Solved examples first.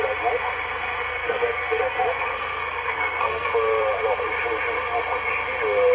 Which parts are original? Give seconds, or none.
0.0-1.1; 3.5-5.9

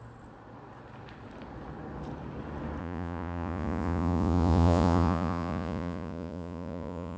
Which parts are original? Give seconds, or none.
0.0-2.8

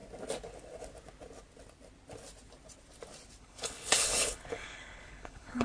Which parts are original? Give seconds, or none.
0.0-3.4

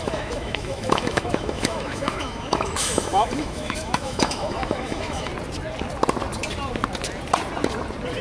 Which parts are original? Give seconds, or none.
5.3-8.2